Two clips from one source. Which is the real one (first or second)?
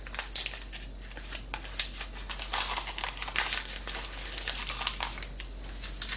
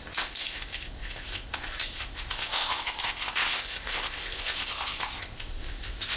first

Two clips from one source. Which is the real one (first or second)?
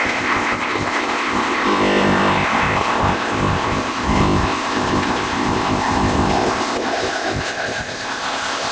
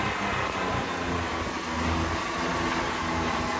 second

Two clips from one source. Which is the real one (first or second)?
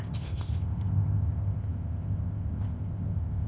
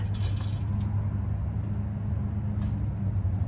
second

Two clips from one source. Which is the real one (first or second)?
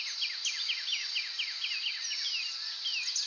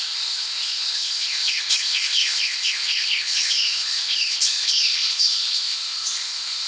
first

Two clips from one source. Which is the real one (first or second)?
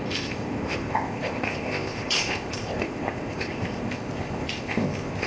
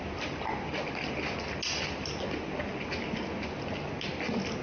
second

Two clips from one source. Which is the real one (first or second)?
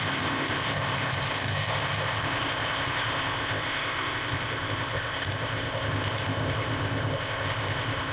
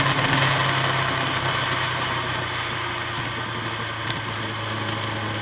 second